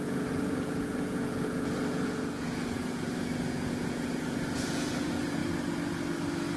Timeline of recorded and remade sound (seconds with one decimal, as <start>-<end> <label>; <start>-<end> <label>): 0.0-5.4 remade; 5.4-6.6 recorded